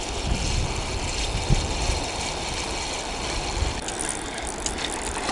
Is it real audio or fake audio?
real